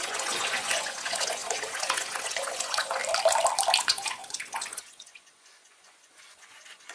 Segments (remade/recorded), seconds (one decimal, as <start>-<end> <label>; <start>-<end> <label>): 0.0-3.0 remade; 3.0-3.8 recorded; 3.8-6.9 remade